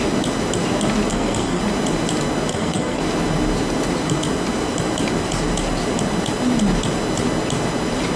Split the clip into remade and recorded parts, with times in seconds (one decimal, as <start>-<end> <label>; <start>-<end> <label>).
0.0-1.1 recorded; 1.1-1.6 remade; 1.6-2.5 recorded; 2.5-3.0 remade; 3.0-8.2 recorded